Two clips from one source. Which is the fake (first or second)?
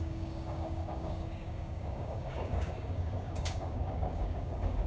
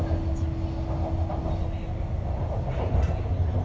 first